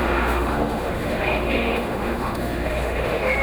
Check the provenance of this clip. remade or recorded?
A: remade